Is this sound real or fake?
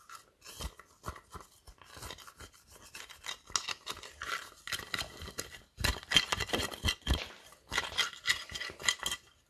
real